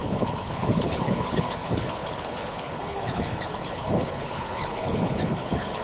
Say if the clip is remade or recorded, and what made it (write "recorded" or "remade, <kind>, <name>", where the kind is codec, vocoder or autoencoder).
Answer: remade, codec, HILCodec